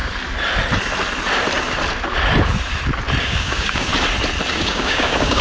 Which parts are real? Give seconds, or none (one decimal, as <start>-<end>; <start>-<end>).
0.0-3.2; 3.9-4.5